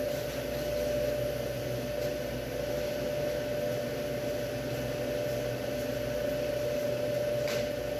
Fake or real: real